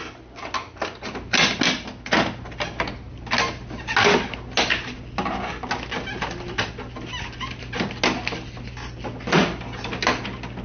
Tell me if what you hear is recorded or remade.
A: recorded